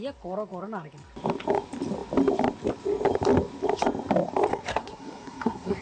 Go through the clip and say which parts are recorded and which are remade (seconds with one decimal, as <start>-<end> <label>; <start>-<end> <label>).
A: 0.0-4.5 recorded; 4.5-5.8 remade